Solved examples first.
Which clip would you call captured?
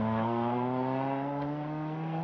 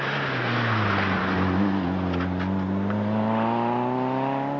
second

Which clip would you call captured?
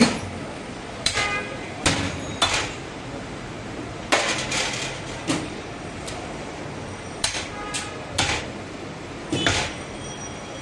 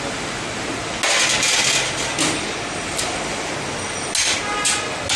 second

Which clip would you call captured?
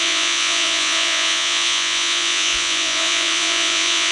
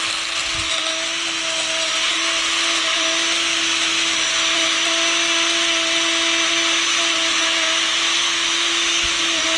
second